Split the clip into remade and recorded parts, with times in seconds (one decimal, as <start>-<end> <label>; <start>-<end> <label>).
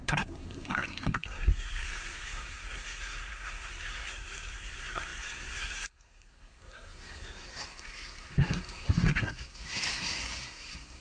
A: 0.0-11.0 remade